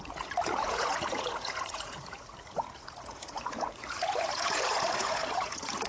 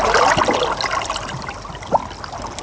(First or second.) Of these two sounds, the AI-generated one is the first